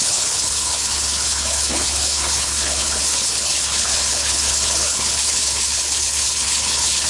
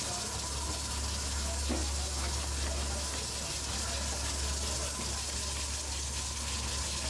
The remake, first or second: first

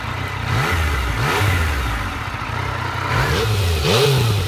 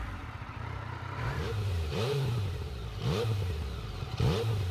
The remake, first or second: second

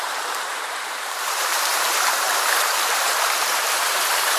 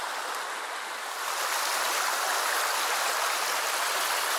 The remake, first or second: first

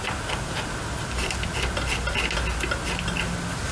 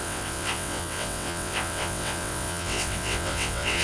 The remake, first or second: second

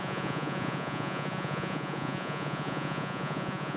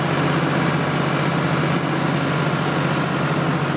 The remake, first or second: first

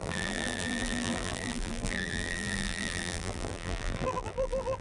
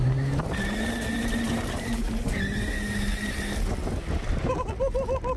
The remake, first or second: first